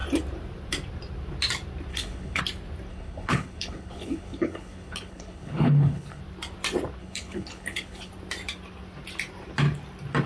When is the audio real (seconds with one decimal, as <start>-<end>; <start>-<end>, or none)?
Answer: 0.0-1.9; 2.4-2.9; 6.2-7.0; 8.1-10.3